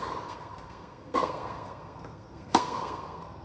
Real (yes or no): no